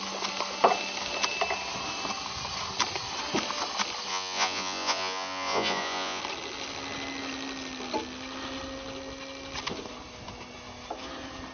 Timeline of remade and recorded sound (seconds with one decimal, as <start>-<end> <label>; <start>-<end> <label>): 0.0-4.1 recorded; 4.1-6.2 remade; 6.2-11.5 recorded